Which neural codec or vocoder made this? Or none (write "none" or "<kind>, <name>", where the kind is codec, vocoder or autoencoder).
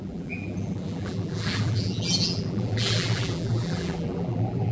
vocoder, BigVGAN v2